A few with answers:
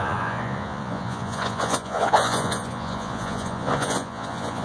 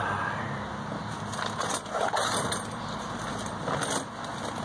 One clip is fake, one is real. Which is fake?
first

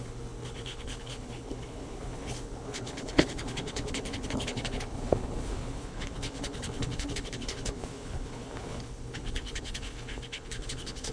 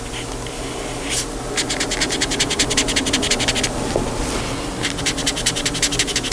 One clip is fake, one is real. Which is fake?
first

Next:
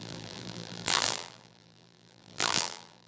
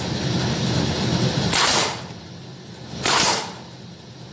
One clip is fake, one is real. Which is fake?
first